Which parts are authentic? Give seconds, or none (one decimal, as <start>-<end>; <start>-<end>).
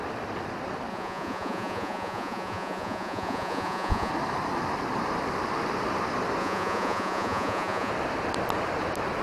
0.0-0.9; 4.1-6.4; 7.9-9.2